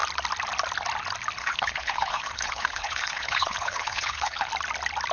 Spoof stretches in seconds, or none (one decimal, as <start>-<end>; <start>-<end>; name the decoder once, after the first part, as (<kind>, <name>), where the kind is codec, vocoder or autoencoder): 1.4-4.5 (codec, HILCodec)